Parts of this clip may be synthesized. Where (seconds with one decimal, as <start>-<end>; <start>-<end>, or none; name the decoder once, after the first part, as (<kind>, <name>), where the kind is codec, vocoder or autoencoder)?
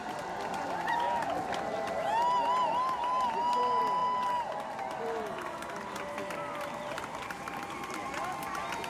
none